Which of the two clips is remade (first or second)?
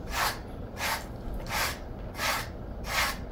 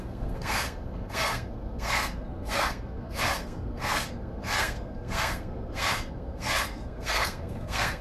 second